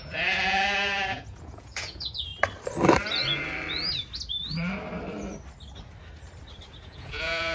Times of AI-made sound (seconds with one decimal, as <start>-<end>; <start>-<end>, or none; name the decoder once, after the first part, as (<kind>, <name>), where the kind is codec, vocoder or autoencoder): 0.0-2.3 (vocoder, Vocos); 6.8-7.5